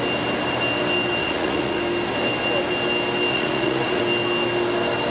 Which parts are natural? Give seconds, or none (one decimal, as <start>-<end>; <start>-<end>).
0.0-1.2; 1.8-3.3; 4.0-5.1